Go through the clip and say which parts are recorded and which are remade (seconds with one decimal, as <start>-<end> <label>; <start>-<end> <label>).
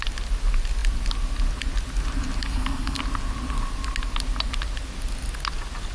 0.0-2.4 recorded; 2.4-3.0 remade; 3.0-5.9 recorded